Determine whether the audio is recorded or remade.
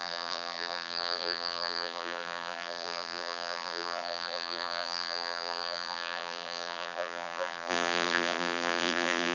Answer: remade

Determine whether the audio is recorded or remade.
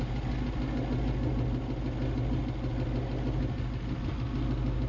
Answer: recorded